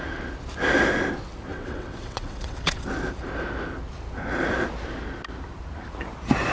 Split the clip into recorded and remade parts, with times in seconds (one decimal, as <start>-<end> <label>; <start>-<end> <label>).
0.0-1.5 recorded; 1.5-2.8 remade; 2.8-6.5 recorded